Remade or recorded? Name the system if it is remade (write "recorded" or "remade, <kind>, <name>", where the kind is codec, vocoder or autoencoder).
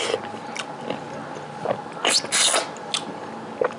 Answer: recorded